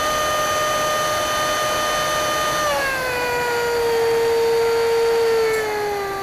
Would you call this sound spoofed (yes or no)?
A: no